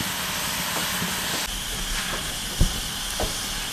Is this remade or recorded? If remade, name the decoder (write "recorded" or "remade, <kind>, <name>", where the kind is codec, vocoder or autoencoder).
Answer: recorded